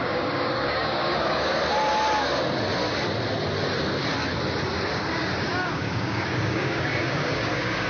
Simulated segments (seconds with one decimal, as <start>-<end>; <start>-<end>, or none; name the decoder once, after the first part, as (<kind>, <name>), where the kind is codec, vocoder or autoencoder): 0.0-1.6 (codec, DAC); 5.4-7.9